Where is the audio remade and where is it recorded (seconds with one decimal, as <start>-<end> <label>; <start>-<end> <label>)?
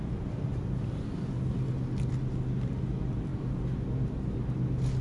0.0-5.0 recorded